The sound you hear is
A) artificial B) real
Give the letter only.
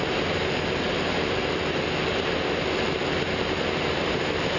B